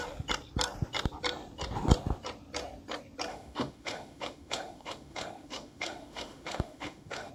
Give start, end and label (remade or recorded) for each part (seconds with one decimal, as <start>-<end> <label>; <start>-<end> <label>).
0.0-3.3 recorded; 3.3-7.3 remade